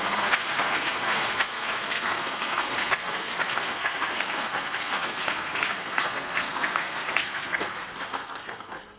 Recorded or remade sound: remade